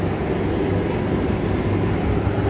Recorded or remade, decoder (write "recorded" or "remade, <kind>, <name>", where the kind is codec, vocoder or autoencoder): recorded